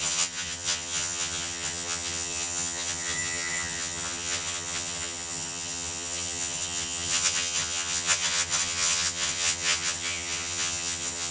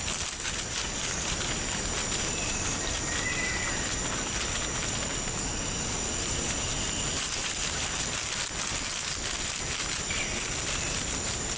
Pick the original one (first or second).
second